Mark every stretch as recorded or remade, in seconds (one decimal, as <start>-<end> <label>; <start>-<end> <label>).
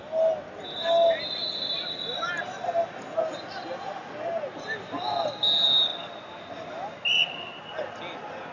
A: 0.0-8.5 recorded